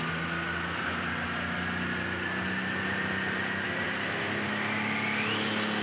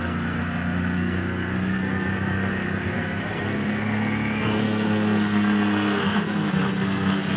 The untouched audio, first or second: first